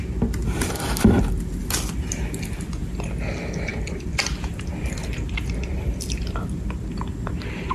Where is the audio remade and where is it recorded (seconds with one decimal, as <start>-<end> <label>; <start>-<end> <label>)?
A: 0.0-0.4 recorded; 0.4-1.2 remade; 1.2-3.7 recorded; 3.7-6.9 remade; 6.9-7.7 recorded